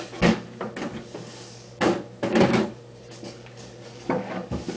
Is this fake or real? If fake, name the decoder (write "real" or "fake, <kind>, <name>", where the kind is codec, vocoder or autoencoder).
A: fake, codec, DAC